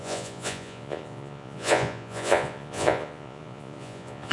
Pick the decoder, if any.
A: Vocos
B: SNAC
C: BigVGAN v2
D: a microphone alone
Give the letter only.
A